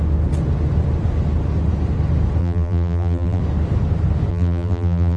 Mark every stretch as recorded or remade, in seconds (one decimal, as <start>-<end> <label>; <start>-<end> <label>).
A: 0.0-2.4 recorded; 2.4-3.4 remade; 3.4-4.3 recorded; 4.3-5.2 remade